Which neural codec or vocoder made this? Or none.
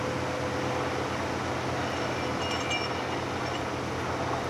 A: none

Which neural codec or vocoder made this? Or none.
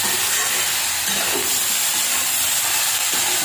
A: none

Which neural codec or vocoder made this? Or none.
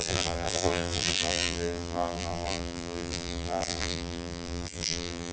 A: vocoder, BigVGAN v2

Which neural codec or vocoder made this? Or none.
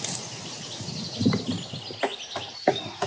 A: none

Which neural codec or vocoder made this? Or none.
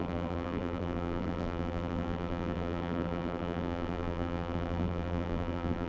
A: vocoder, BigVGAN v2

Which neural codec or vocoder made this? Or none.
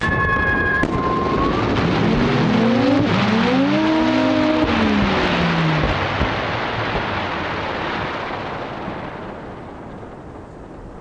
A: none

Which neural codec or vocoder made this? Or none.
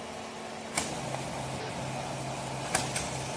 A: none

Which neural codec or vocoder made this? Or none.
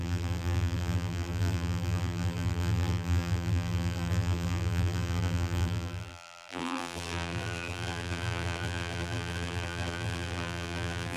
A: vocoder, BigVGAN v2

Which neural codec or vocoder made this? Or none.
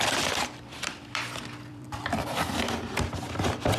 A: vocoder, BigVGAN v2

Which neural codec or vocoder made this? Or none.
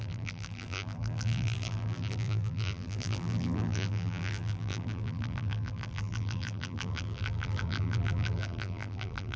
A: vocoder, BigVGAN v2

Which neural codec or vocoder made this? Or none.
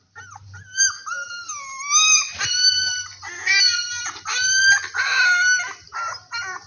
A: none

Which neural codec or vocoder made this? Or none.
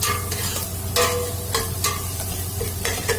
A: none